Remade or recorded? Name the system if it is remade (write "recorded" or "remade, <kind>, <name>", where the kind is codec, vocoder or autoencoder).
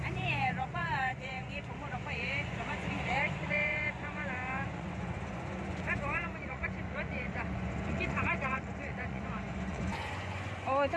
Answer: remade, vocoder, Vocos